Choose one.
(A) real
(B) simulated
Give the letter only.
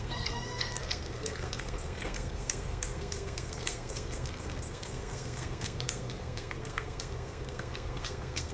B